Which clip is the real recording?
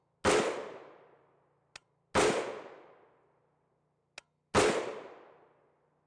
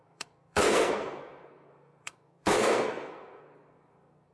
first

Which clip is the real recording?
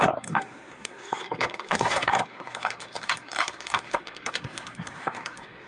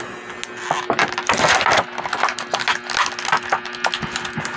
second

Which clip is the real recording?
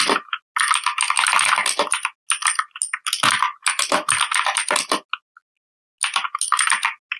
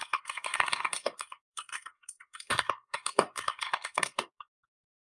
first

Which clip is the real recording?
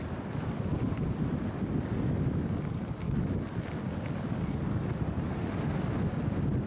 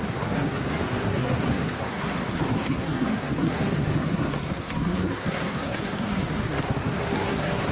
first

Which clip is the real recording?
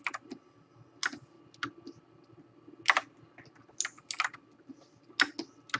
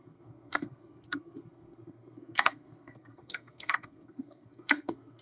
first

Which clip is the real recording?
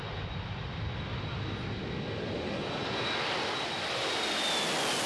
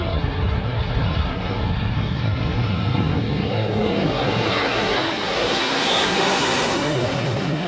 first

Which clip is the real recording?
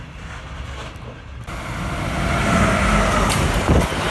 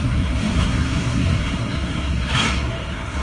first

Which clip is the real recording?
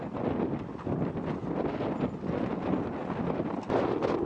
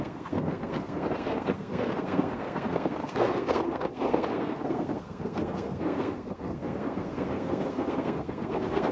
first